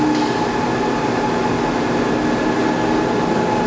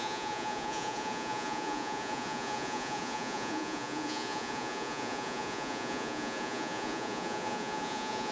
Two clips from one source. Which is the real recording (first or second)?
first